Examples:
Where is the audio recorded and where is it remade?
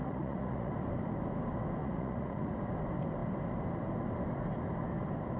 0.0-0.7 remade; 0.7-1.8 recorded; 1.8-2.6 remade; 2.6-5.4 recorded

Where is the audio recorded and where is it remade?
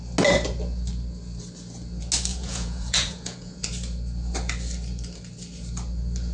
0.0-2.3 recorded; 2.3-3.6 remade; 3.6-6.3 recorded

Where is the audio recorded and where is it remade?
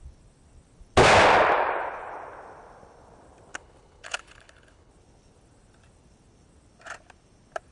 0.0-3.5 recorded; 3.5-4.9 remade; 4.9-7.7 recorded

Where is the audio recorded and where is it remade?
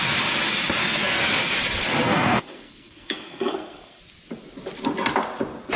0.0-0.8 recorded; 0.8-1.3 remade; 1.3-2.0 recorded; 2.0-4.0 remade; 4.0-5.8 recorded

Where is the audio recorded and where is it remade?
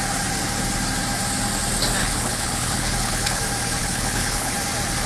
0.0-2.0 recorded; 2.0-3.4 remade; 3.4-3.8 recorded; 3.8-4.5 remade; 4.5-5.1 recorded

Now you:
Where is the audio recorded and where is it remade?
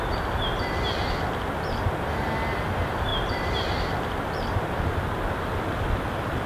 0.0-3.1 recorded; 3.1-5.5 remade; 5.5-6.5 recorded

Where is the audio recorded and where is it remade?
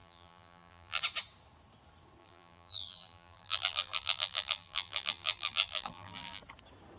0.0-1.0 remade; 1.0-2.2 recorded; 2.2-6.4 remade; 6.4-7.0 recorded